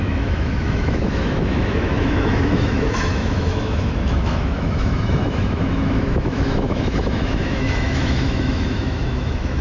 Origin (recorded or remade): remade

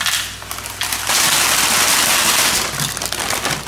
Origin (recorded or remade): recorded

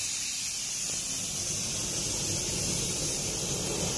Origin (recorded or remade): recorded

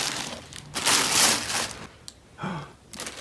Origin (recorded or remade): recorded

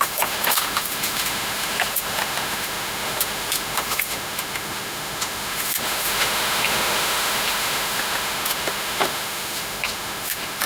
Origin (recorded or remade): remade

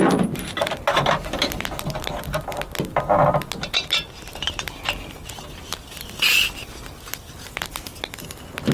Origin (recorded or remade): recorded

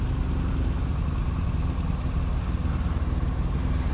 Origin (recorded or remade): recorded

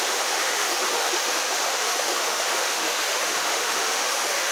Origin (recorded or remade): remade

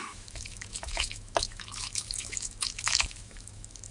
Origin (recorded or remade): remade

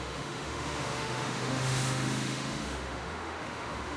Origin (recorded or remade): remade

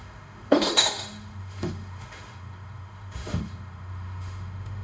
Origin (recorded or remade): remade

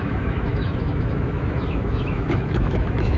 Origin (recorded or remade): remade